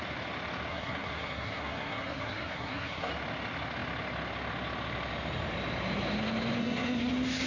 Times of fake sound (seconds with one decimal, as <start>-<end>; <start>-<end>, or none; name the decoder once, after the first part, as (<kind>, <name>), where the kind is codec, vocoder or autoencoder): 0.7-3.1 (codec, SNAC); 6.6-7.1